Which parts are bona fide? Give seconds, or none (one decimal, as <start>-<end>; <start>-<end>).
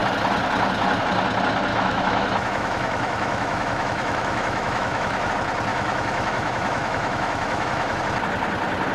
0.0-1.7; 5.3-5.7; 8.0-8.9